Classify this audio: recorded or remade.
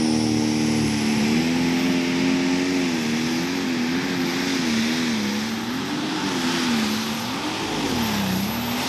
recorded